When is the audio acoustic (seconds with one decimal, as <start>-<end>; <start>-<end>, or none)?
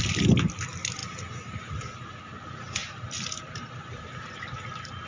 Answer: none